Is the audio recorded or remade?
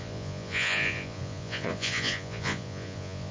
remade